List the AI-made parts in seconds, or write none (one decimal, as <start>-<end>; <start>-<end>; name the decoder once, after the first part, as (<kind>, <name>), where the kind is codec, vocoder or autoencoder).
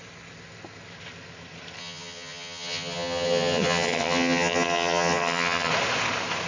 1.8-5.7 (vocoder, HiFi-GAN)